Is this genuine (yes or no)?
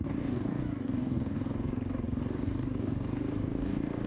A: no